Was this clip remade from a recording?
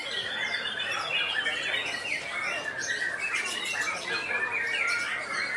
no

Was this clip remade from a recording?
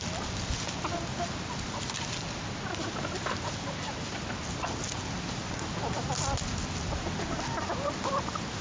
no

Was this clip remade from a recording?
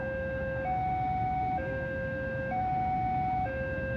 yes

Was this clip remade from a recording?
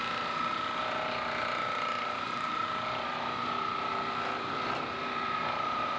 no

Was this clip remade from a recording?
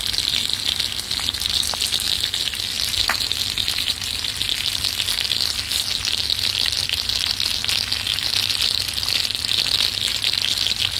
no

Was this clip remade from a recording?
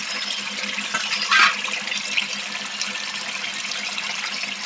no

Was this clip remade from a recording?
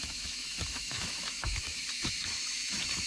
yes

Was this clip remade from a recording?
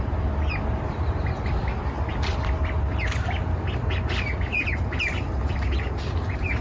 no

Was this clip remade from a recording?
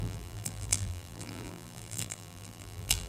yes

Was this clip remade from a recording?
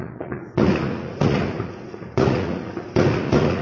yes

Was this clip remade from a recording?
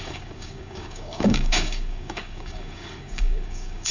yes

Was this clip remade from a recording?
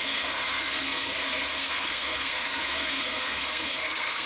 yes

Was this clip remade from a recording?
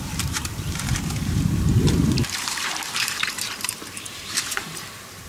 yes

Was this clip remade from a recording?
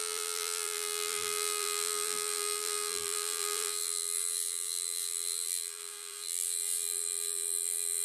yes